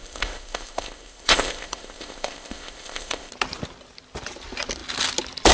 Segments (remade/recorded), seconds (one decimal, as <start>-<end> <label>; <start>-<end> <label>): 0.0-3.3 remade; 3.3-5.5 recorded